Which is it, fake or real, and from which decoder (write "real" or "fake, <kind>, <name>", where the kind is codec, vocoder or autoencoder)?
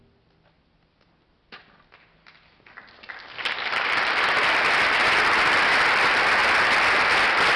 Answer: real